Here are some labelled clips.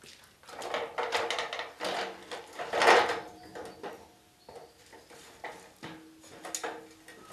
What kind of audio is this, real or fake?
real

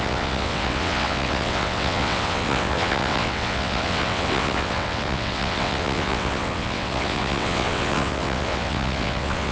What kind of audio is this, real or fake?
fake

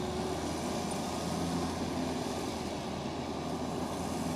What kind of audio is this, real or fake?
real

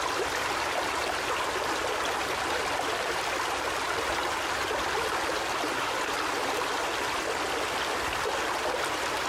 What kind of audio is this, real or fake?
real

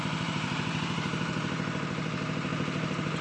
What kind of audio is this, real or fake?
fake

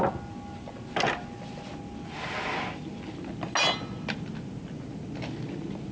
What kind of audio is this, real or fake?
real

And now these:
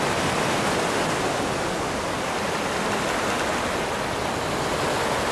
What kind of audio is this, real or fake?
real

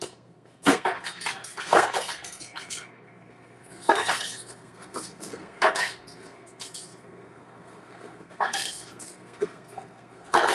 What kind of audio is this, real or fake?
fake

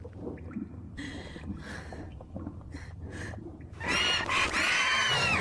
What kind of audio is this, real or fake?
real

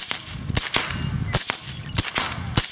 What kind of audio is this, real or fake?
real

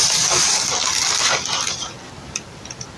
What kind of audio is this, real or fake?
real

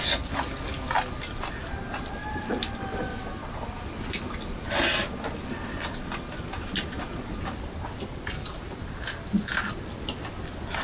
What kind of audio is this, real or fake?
real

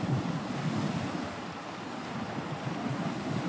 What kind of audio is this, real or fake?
real